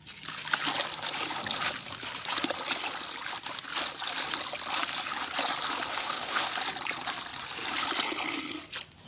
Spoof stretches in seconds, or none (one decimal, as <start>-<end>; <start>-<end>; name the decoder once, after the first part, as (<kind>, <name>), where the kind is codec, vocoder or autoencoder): 5.9-6.5 (autoencoder, DAC-VAE)